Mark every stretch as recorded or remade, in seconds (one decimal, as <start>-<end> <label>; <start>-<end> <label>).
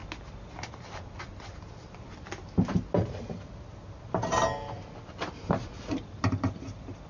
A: 0.0-7.1 recorded